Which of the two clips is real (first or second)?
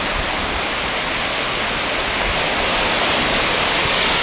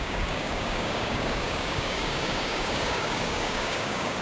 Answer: first